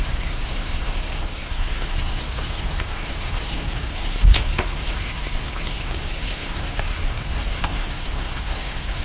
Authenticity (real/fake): fake